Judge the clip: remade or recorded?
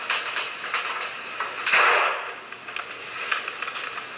recorded